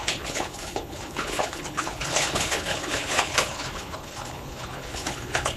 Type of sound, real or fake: fake